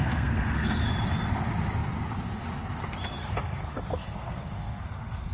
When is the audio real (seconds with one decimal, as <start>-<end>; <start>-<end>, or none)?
0.8-3.2